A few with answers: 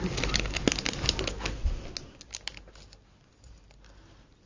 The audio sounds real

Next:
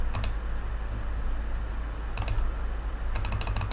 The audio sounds real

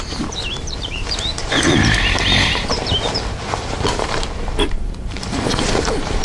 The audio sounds fake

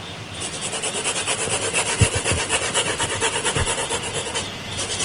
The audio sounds real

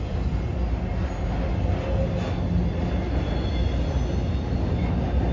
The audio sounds real